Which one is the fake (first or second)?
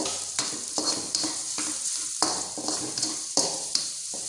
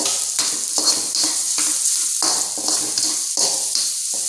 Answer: first